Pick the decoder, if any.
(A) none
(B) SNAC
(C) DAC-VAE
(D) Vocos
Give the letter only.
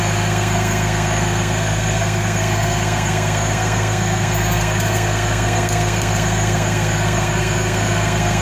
B